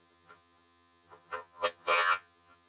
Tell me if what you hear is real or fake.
fake